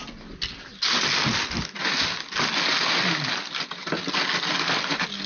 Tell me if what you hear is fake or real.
real